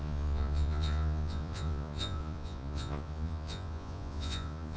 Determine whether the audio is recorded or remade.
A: remade